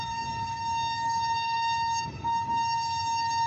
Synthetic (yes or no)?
yes